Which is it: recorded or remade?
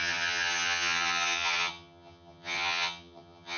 remade